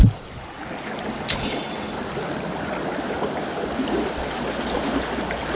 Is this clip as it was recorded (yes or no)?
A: yes